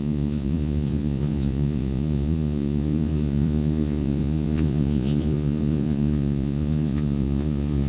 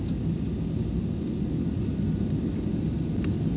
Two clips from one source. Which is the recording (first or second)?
second